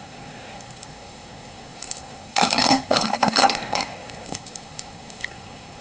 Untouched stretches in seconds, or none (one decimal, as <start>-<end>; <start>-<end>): none